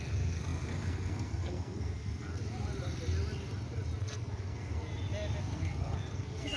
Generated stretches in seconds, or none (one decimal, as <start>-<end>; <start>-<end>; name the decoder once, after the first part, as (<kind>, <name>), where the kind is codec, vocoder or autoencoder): 0.0-2.4 (codec, SNAC); 4.0-4.9; 5.4-6.6